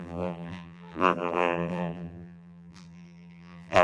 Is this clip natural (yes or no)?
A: no